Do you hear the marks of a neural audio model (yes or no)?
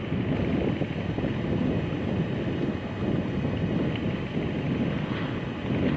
no